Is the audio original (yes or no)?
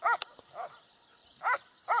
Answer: yes